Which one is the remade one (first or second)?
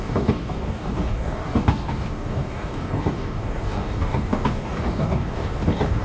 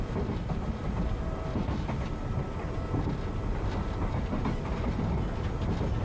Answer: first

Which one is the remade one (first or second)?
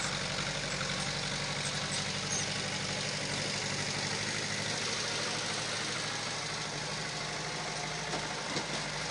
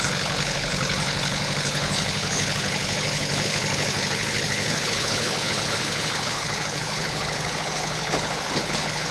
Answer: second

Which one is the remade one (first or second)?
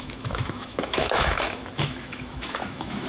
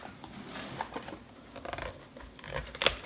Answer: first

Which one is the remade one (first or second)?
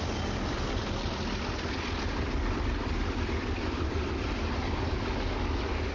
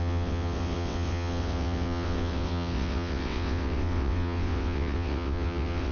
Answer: second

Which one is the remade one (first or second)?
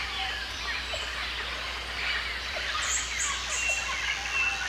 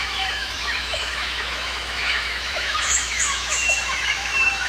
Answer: second